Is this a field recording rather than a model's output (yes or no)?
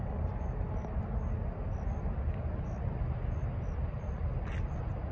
yes